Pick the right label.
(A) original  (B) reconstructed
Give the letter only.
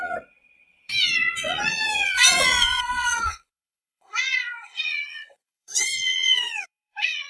B